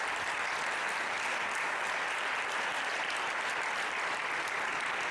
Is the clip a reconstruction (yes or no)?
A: no